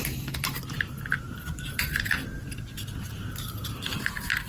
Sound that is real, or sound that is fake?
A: real